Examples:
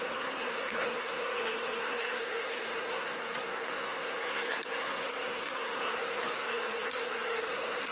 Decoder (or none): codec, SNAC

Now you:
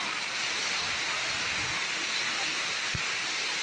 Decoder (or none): none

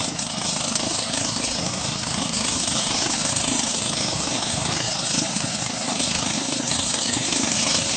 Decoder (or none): codec, SNAC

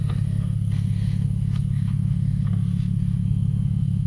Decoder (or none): codec, SNAC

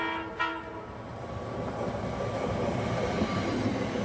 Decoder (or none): none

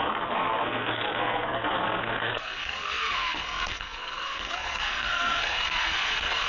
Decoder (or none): codec, SNAC